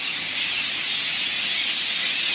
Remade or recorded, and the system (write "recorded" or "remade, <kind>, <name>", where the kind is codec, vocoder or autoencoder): recorded